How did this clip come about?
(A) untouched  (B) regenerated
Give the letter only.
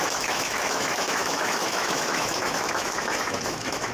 B